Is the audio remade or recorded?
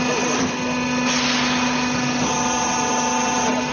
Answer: recorded